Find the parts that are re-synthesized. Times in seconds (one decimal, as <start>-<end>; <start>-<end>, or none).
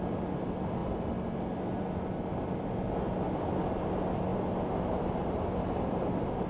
none